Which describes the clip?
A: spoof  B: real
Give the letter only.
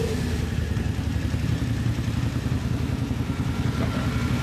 B